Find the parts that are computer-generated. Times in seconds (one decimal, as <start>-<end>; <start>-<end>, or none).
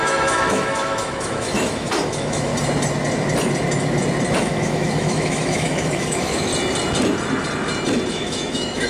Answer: 0.0-2.5; 4.4-6.5; 8.1-8.9